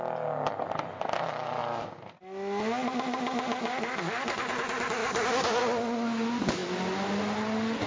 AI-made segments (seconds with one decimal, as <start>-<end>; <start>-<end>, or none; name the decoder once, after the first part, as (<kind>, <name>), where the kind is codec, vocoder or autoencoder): 1.6-2.2 (vocoder, BigVGAN v2); 5.0-5.6